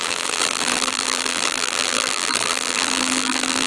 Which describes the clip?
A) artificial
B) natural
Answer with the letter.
A